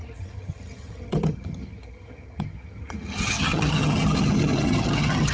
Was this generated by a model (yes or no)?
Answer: yes